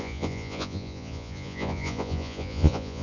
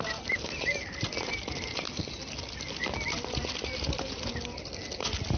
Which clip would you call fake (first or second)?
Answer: first